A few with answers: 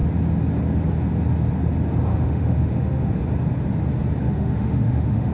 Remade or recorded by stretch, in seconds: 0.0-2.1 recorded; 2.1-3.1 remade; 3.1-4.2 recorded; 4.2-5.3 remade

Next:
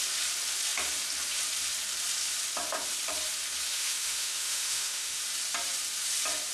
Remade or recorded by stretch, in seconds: 0.0-3.7 recorded; 3.7-5.2 remade; 5.2-6.5 recorded